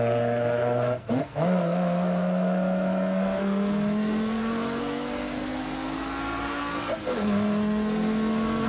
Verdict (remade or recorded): remade